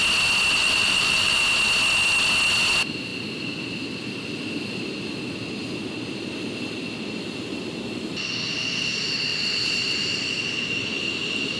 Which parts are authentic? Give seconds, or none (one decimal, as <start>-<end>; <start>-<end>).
0.0-0.6; 1.4-9.3; 10.8-11.6